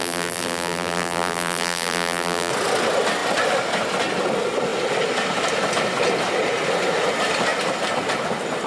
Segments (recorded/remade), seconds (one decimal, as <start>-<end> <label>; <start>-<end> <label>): 0.0-2.5 remade; 2.5-8.7 recorded